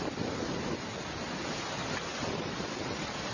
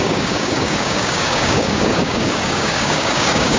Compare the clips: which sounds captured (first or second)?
first